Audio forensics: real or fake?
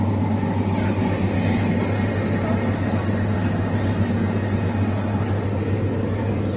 real